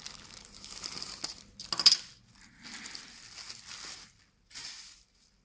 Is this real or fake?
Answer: real